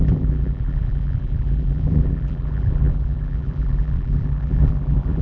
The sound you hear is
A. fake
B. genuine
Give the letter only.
A